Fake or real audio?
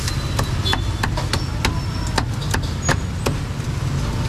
real